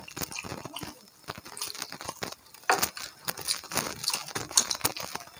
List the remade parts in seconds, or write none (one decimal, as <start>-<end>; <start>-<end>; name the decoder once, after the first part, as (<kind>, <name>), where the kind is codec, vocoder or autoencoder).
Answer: none